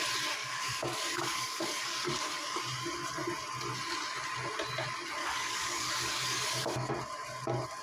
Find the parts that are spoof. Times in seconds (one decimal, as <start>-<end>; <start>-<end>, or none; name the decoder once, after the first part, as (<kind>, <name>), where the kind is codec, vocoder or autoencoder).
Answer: 0.4-2.6 (codec, DAC); 5.2-6.9

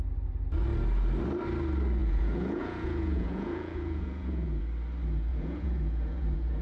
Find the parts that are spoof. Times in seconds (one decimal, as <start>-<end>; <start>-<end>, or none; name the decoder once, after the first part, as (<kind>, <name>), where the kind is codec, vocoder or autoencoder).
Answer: 2.0-4.6 (vocoder, Vocos); 5.3-6.6

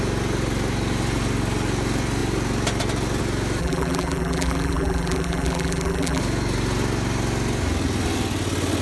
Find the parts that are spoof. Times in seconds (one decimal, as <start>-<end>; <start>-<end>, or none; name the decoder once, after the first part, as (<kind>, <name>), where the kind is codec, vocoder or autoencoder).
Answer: 3.6-6.2 (vocoder, BigVGAN v2)

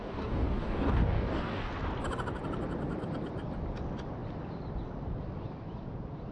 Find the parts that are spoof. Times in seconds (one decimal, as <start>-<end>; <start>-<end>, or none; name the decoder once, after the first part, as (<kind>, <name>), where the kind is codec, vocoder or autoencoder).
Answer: 0.0-1.7 (codec, DAC)

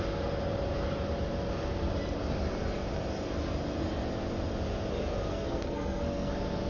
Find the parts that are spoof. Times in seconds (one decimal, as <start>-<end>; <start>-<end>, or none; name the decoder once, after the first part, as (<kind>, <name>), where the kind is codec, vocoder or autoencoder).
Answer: 5.3-6.3 (codec, SNAC)